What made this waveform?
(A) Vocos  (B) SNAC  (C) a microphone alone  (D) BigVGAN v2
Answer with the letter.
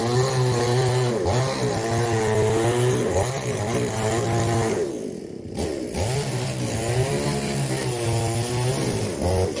C